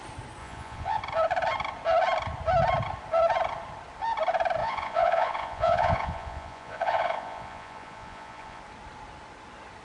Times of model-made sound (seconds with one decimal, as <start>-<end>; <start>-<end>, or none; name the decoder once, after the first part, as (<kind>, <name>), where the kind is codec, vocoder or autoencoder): 0.4-1.0 (vocoder, Vocos); 4.6-8.6